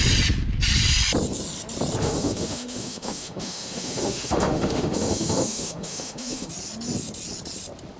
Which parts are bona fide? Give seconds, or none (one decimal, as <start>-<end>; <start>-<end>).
0.0-2.0; 6.5-8.0